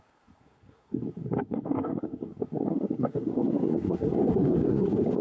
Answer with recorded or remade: remade